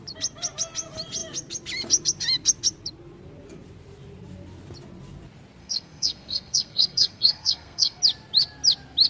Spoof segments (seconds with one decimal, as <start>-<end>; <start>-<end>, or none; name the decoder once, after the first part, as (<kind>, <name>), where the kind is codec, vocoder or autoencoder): 5.6-8.0 (codec, SNAC)